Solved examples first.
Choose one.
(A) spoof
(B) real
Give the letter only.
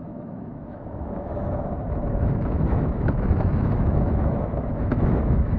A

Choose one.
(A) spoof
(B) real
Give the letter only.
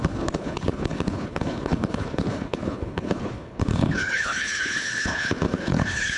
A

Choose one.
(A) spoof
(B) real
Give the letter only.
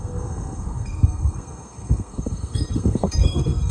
A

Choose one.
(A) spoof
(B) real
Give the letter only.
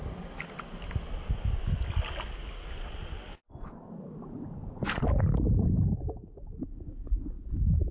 B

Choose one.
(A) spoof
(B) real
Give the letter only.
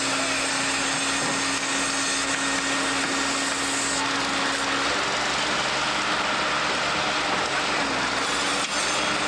B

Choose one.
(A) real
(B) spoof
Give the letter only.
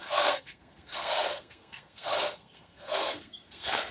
B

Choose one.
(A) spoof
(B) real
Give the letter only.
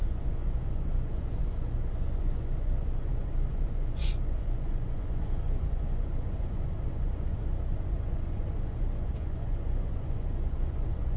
A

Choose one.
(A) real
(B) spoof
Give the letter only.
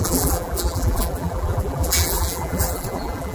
B